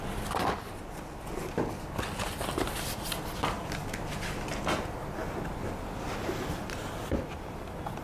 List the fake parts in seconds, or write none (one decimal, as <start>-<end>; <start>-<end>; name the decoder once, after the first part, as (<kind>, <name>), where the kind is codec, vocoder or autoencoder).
none